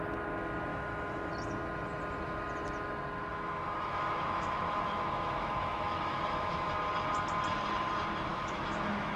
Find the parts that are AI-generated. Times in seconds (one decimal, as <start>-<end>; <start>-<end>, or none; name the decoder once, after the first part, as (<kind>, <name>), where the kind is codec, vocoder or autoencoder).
0.7-1.3 (autoencoder, DAC-VAE); 3.3-6.7; 8.3-9.2